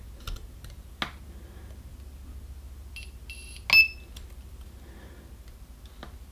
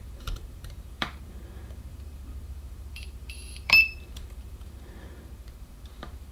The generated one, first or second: second